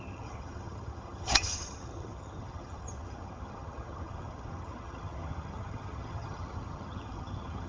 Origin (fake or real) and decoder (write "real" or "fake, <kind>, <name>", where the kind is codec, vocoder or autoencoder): fake, vocoder, HiFi-GAN